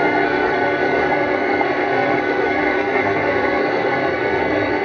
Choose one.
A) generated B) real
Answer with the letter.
A